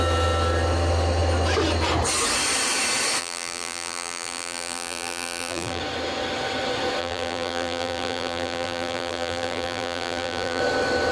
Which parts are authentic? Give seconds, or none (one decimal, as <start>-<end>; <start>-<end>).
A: 0.0-3.2; 5.8-7.0; 10.6-11.1